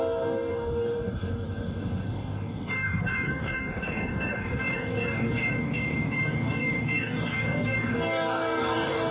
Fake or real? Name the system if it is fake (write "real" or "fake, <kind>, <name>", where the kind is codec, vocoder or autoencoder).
fake, codec, DAC